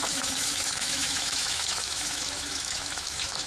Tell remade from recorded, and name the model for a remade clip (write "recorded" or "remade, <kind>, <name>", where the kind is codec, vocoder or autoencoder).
remade, autoencoder, DAC-VAE